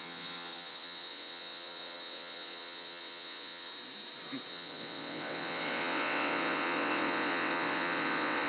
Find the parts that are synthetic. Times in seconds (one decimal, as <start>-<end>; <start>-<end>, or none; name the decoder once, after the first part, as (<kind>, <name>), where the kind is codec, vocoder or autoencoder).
0.0-3.7 (vocoder, WaveNeXt); 4.5-8.5